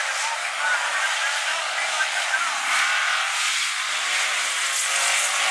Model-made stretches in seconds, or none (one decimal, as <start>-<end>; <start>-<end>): 0.4-1.0; 1.5-2.2